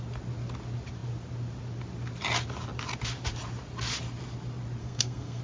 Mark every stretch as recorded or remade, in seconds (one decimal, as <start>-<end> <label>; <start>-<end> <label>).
0.0-4.8 recorded; 4.8-5.4 remade